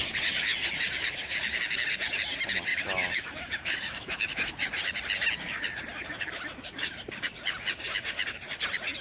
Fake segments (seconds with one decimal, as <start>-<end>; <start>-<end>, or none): 2.7-4.5